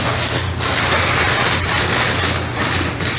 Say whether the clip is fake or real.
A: real